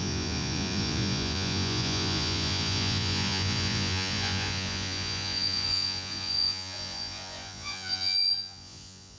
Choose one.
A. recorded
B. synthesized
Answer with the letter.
B